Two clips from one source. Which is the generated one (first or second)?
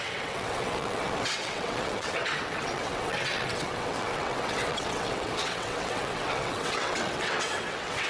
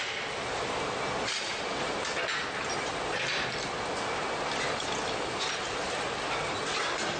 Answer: first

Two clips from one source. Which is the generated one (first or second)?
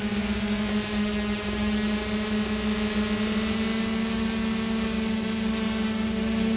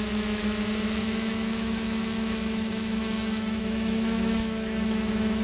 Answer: second